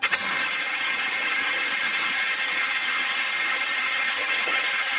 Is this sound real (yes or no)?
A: no